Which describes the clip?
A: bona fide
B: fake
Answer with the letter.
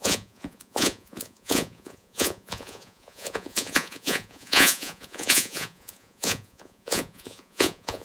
B